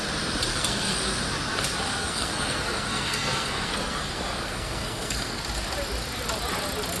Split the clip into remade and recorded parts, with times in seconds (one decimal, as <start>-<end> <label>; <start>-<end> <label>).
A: 0.0-0.5 recorded; 0.5-1.0 remade; 1.0-2.0 recorded; 2.0-5.4 remade; 5.4-7.0 recorded